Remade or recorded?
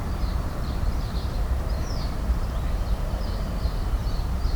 remade